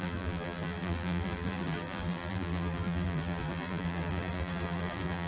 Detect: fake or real fake